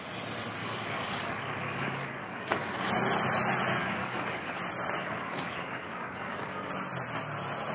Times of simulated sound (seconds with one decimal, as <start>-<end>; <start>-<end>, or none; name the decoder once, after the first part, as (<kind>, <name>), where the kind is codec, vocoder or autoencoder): 0.6-2.9 (codec, DAC); 3.8-4.6; 5.0-6.7